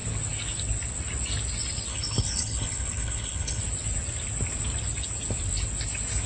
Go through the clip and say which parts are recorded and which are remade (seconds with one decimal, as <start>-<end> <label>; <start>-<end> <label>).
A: 0.0-1.9 recorded; 1.9-3.6 remade; 3.6-6.3 recorded